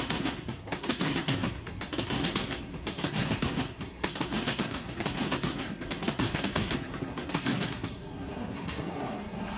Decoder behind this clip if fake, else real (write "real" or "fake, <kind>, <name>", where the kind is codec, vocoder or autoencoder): fake, codec, SNAC